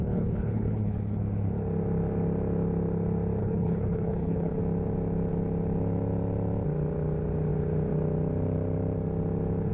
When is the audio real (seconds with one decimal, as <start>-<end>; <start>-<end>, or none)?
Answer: 1.2-3.4; 4.6-9.7